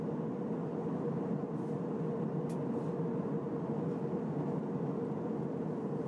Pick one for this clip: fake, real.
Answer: real